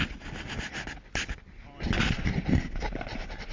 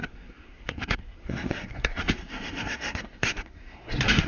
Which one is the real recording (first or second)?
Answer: first